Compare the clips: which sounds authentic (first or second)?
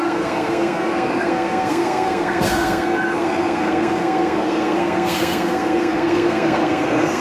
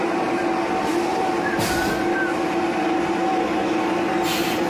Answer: second